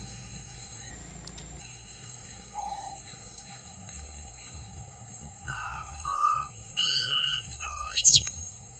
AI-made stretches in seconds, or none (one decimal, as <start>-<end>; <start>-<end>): 0.0-0.9; 1.6-8.8

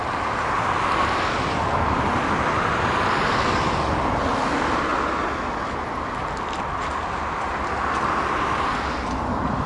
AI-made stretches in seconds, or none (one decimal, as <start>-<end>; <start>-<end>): none

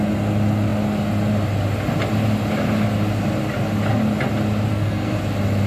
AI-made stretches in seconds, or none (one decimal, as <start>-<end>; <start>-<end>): 4.7-5.2

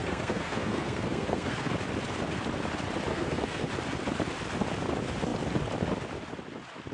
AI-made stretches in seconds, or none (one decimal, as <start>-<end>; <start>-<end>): 0.0-1.7; 3.1-3.7

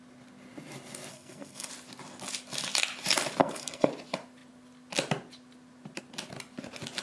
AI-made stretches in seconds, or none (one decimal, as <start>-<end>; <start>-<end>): 1.1-1.7; 3.4-3.9

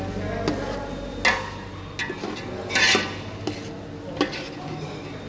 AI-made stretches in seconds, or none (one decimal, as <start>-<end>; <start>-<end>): none

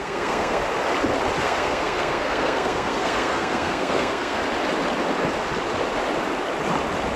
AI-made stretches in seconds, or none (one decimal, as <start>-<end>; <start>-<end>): 0.0-0.6; 1.4-4.4